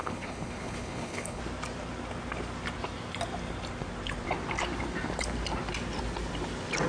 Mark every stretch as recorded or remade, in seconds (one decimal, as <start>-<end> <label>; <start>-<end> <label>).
0.0-1.4 remade; 1.4-6.9 recorded